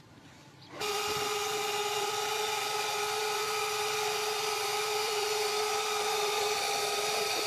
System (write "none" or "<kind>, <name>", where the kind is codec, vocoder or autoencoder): vocoder, BigVGAN v2